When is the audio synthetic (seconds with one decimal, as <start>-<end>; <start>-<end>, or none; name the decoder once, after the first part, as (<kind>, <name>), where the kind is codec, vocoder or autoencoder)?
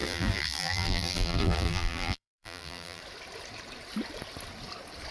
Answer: 0.0-3.0 (vocoder, BigVGAN v2)